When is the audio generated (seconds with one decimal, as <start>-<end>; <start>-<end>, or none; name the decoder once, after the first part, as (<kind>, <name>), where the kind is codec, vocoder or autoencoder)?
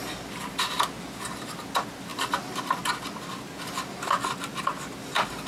none